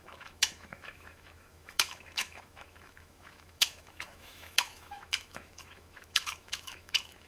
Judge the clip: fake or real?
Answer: fake